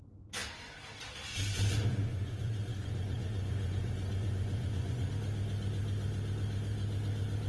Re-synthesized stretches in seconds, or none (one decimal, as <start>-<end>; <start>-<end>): 1.9-5.1